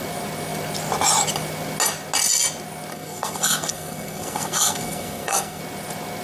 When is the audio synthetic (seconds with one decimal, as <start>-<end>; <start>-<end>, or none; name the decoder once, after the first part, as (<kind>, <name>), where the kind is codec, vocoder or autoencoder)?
2.9-5.6 (codec, SNAC)